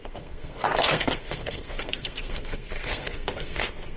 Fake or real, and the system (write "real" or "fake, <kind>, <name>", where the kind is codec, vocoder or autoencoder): fake, codec, SNAC